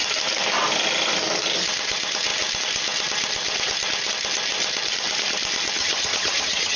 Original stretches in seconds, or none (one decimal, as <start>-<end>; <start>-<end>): 0.0-5.8